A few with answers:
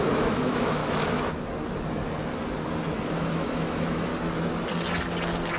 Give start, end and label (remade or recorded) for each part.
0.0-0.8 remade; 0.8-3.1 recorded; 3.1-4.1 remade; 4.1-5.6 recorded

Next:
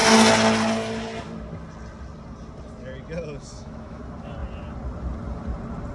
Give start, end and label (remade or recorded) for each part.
0.0-3.4 recorded; 3.4-4.0 remade; 4.0-5.9 recorded

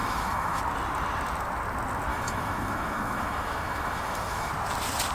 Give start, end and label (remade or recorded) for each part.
0.0-0.6 remade; 0.6-2.1 recorded; 2.1-4.5 remade; 4.5-5.1 recorded

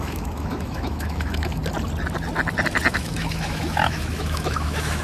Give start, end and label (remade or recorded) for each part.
0.0-1.6 remade; 1.6-2.9 recorded; 2.9-5.0 remade

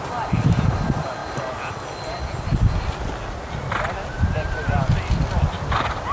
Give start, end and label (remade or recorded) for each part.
0.0-6.1 recorded

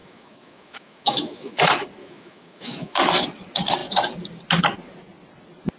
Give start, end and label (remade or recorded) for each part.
0.0-1.6 remade; 1.6-2.0 recorded; 2.0-3.0 remade; 3.0-5.8 recorded

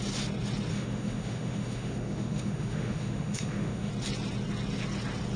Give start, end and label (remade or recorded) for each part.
0.0-0.7 recorded; 0.7-3.9 remade; 3.9-5.4 recorded

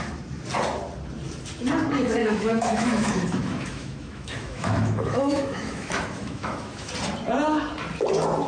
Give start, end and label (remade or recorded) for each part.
0.0-2.2 recorded; 2.2-6.9 remade; 6.9-8.5 recorded